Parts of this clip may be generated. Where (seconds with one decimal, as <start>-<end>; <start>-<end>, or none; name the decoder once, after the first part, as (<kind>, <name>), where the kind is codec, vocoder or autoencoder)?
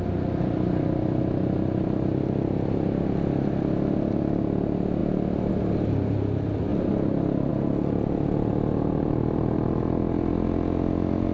none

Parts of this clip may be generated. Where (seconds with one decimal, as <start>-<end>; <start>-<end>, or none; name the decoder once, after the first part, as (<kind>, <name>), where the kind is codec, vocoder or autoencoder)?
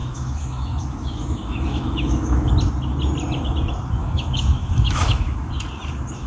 0.0-2.5 (autoencoder, DAC-VAE); 4.0-5.5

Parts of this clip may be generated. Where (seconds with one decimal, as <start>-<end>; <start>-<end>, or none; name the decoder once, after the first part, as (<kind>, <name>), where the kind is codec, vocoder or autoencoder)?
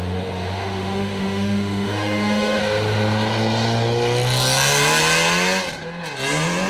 0.0-2.6 (autoencoder, DAC-VAE)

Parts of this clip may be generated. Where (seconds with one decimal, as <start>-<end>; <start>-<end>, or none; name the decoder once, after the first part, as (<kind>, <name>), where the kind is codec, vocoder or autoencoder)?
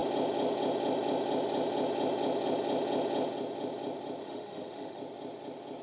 4.2-5.0 (autoencoder, DAC-VAE)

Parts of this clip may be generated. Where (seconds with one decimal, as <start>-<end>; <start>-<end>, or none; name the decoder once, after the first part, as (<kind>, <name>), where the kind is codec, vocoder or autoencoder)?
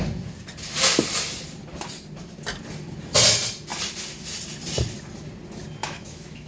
5.8-6.5 (autoencoder, DAC-VAE)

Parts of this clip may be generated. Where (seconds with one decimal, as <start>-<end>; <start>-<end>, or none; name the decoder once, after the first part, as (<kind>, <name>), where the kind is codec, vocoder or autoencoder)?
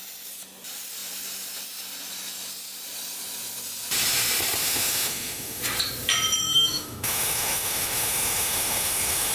4.6-5.6 (autoencoder, DAC-VAE); 6.4-9.3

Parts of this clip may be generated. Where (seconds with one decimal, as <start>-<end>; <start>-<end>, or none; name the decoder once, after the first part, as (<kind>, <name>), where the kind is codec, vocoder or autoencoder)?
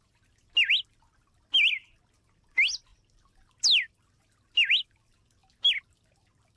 none